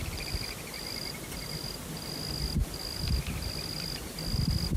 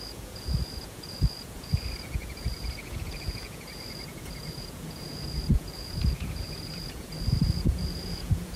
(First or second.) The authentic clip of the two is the first